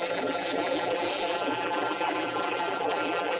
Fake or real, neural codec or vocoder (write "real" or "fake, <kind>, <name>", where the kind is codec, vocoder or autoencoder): fake, vocoder, BigVGAN v2